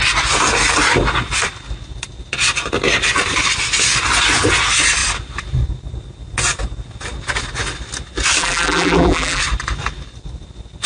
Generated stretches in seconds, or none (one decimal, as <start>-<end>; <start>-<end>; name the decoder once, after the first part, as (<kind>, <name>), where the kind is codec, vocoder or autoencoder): 8.4-9.4 (vocoder, BigVGAN v2)